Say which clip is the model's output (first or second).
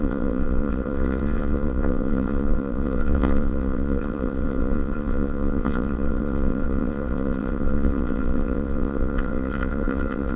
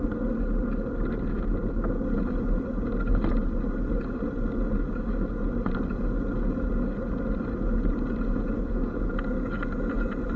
first